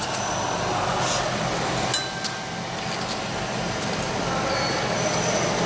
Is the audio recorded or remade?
recorded